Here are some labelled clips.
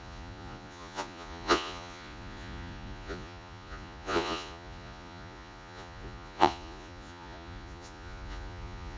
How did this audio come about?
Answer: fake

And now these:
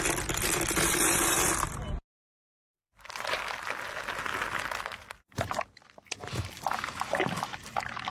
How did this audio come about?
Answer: real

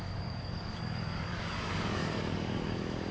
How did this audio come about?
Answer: fake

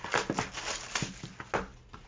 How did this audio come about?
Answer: real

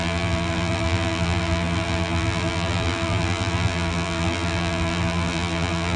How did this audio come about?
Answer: fake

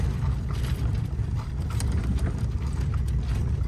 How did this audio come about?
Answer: real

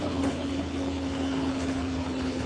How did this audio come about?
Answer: fake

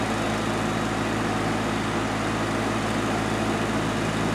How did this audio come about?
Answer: real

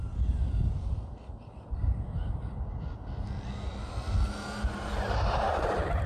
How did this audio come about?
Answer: real